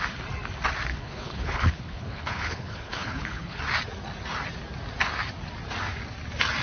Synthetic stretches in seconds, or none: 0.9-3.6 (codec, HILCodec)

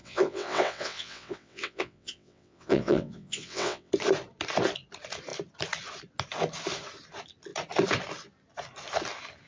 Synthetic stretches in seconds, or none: 0.0-3.9 (vocoder, WaveNeXt)

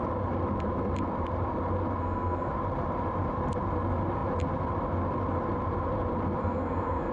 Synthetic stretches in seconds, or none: 2.0-2.5 (codec, SNAC); 6.4-7.1

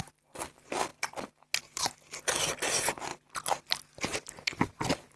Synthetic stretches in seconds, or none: none

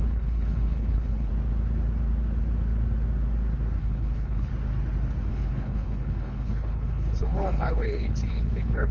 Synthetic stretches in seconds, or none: 0.0-1.3 (codec, HILCodec); 3.8-4.5; 5.3-8.9

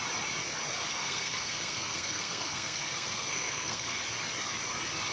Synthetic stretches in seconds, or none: 0.9-4.0 (codec, SNAC)

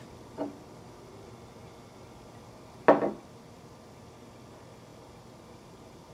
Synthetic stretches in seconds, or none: 4.9-6.1 (vocoder, BigVGAN v2)

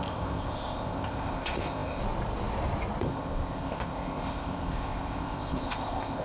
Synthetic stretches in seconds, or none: 0.0-2.0 (codec, ZipCodec); 3.0-6.2